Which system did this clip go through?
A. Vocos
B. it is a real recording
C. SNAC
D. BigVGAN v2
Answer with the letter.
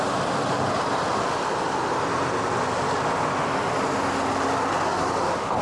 B